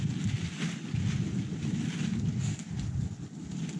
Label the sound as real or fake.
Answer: real